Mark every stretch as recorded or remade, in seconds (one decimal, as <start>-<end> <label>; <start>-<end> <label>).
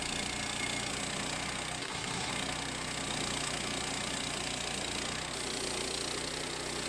0.0-1.8 recorded; 1.8-2.3 remade; 2.3-6.9 recorded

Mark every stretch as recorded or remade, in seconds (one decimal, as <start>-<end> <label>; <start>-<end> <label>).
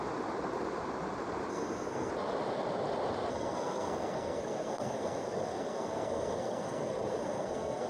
0.0-1.5 recorded; 1.5-2.1 remade; 2.1-3.3 recorded; 3.3-7.9 remade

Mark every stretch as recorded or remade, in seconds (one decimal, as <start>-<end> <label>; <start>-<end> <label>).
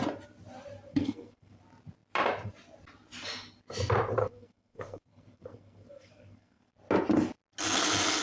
0.0-0.9 recorded; 0.9-1.6 remade; 1.6-4.2 recorded; 4.2-6.7 remade; 6.7-8.2 recorded